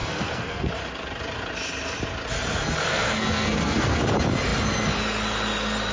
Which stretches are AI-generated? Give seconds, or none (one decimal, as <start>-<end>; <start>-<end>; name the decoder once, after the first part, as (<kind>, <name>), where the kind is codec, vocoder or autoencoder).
0.0-0.7 (codec, SNAC); 2.9-4.0